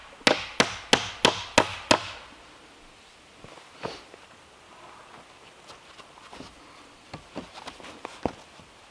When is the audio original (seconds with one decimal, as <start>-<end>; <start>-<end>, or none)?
0.0-8.9